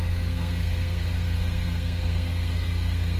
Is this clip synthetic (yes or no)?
yes